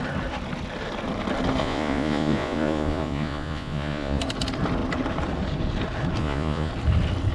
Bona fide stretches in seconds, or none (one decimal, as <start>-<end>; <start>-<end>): 0.0-1.6; 4.2-6.2; 6.7-7.3